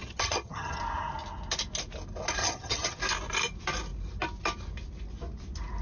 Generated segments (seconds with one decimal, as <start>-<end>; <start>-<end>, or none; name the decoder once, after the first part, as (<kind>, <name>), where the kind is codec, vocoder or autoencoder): 0.0-0.8 (vocoder, HiFi-GAN); 2.4-3.0